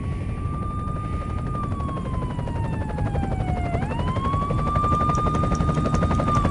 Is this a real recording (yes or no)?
yes